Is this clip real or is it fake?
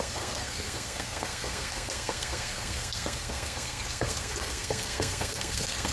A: fake